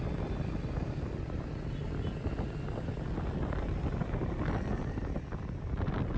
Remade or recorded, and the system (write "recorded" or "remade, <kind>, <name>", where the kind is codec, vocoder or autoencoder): recorded